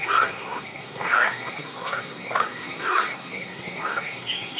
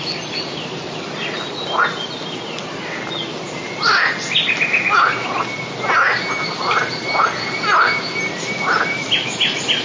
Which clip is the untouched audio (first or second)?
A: second